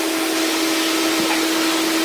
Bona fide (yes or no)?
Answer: yes